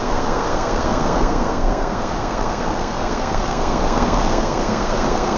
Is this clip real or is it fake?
fake